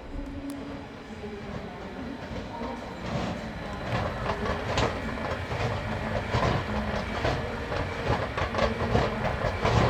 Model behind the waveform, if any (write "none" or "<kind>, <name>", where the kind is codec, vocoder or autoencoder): none